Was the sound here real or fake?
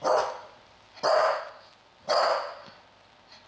real